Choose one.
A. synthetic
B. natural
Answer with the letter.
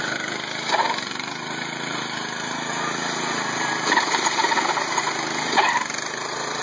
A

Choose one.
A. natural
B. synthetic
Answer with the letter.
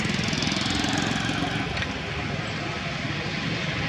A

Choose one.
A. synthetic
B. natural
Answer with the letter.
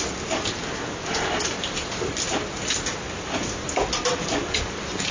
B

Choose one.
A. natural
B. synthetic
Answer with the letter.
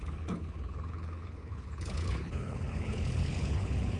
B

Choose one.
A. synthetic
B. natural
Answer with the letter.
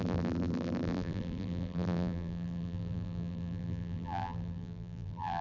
A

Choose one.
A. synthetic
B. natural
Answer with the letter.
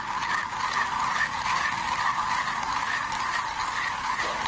B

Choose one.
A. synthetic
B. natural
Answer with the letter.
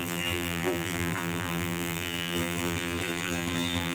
A